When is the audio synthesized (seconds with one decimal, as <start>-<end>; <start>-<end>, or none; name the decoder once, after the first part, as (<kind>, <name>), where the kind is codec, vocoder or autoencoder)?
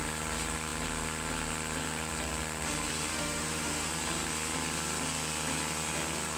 3.1-3.9 (autoencoder, DAC-VAE)